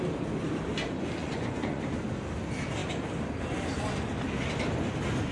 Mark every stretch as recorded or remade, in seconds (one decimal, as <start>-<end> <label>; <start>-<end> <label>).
0.0-1.2 recorded; 1.2-1.8 remade; 1.8-5.3 recorded